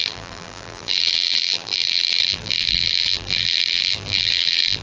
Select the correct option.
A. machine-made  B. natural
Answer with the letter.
A